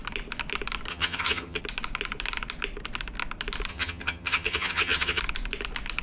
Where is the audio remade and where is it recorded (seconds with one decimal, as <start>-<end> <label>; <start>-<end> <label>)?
0.0-0.9 recorded; 0.9-1.6 remade; 1.6-3.7 recorded; 3.7-5.2 remade; 5.2-6.0 recorded